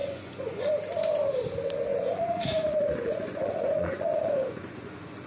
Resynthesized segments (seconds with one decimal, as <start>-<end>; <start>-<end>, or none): 0.0-0.7; 1.9-5.3